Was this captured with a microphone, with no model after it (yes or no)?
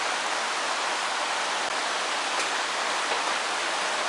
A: yes